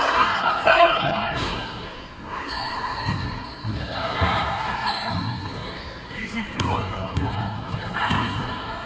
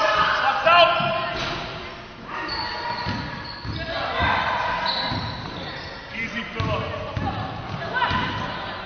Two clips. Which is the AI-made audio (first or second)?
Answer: first